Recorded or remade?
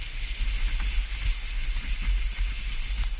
recorded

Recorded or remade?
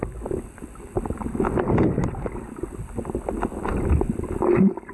recorded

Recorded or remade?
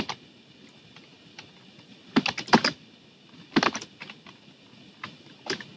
recorded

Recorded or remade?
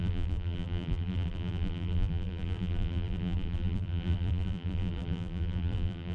remade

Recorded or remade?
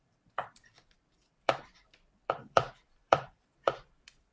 remade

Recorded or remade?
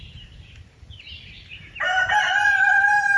remade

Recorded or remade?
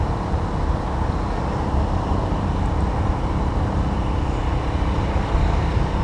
remade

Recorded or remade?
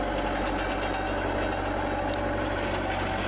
recorded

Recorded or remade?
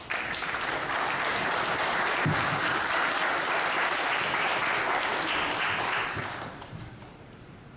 remade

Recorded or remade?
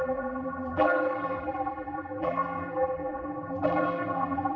remade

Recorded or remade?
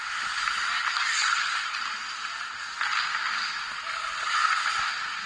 recorded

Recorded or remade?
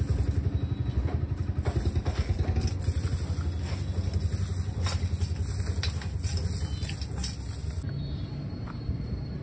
recorded